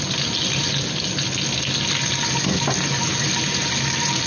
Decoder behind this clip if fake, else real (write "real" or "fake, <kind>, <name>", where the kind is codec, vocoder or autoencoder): real